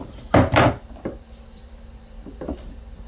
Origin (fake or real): fake